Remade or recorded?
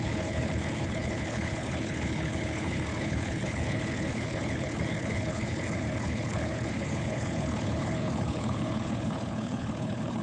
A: remade